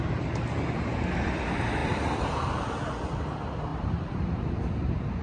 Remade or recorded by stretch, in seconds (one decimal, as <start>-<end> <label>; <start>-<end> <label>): 0.0-1.8 recorded; 1.8-2.7 remade; 2.7-3.7 recorded; 3.7-4.5 remade; 4.5-5.2 recorded